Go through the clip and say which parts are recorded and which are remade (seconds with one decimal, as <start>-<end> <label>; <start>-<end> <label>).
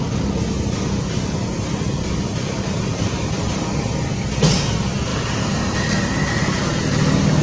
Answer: 0.0-7.4 recorded